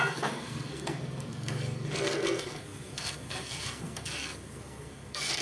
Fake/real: fake